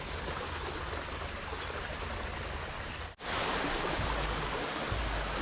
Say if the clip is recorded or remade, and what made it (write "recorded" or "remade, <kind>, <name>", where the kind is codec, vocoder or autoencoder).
recorded